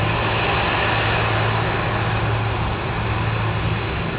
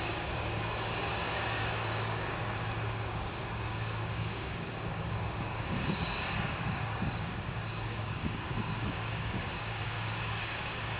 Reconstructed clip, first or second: second